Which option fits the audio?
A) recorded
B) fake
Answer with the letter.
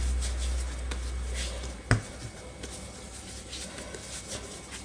A